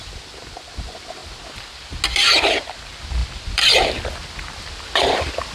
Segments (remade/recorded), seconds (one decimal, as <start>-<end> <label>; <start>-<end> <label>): 0.0-3.2 recorded; 3.2-3.9 remade; 3.9-5.5 recorded

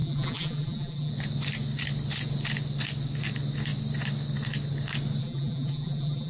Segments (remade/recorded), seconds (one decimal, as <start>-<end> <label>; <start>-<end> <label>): 0.0-1.1 remade; 1.1-5.2 recorded; 5.2-6.3 remade

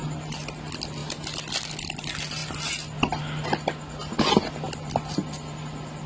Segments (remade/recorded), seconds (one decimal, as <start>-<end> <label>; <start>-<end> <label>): 0.0-1.0 remade; 1.0-1.7 recorded; 1.7-6.1 remade

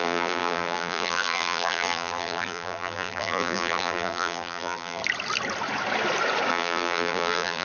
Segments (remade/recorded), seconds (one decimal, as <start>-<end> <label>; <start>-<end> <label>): 0.0-5.0 remade; 5.0-6.5 recorded; 6.5-7.6 remade

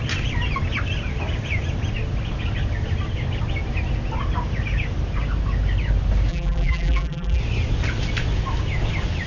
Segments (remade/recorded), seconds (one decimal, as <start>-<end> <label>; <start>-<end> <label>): 0.0-6.3 recorded; 6.3-7.4 remade; 7.4-9.3 recorded